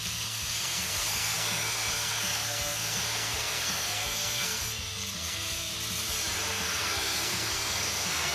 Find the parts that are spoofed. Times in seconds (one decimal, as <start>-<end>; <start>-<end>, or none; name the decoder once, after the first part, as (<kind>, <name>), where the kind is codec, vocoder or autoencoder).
0.0-5.7 (codec, SNAC); 6.5-8.3